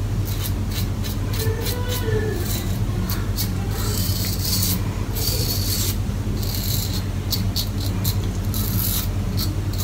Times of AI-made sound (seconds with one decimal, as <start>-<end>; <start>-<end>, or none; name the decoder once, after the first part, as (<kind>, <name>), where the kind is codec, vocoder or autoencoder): 2.2-4.5 (vocoder, BigVGAN v2)